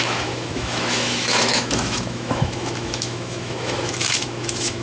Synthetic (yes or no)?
yes